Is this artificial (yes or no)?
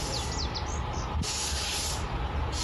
no